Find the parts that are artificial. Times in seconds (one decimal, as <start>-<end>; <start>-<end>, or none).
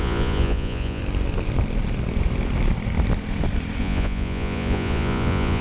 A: 0.0-1.0; 3.8-5.6